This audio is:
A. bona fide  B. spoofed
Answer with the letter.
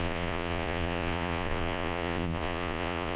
B